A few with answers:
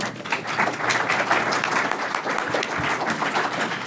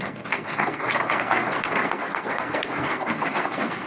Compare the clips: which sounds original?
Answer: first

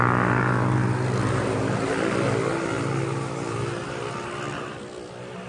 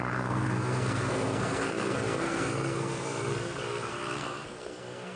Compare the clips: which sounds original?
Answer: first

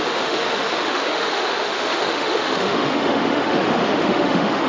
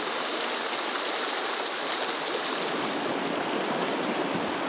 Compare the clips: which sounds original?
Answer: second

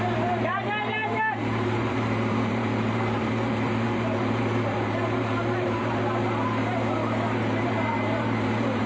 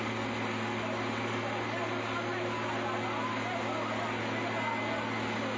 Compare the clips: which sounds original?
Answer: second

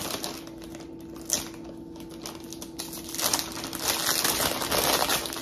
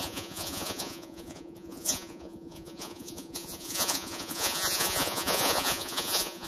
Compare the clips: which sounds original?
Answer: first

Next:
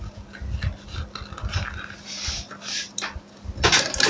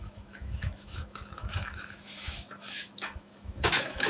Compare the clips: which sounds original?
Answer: first